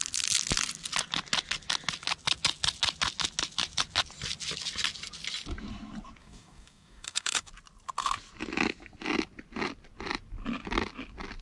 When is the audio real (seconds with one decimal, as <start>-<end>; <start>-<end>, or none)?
0.0-6.2; 7.5-11.4